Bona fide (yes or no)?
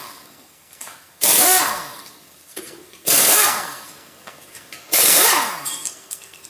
no